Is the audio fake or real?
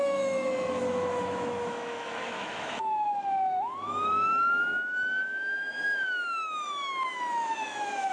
fake